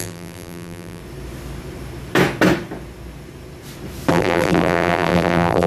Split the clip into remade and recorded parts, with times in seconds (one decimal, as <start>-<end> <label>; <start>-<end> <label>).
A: 0.0-1.0 remade; 1.0-4.1 recorded; 4.1-5.7 remade